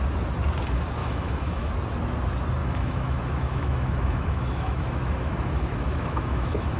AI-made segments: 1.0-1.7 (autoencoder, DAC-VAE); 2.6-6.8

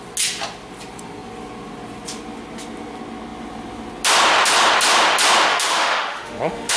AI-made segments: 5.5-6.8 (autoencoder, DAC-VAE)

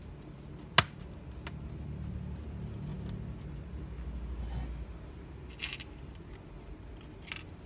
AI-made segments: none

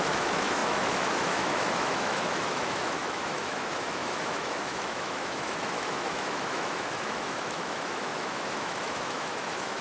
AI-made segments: 0.0-9.8 (autoencoder, DAC-VAE)